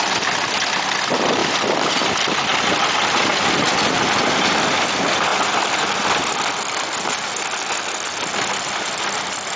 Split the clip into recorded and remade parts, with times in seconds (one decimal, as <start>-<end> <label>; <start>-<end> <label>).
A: 0.0-1.4 recorded; 1.4-2.0 remade; 2.0-2.5 recorded; 2.5-3.3 remade; 3.3-5.3 recorded; 5.3-9.6 remade